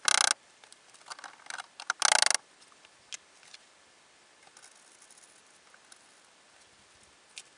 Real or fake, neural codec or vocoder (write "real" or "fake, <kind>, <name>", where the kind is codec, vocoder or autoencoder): real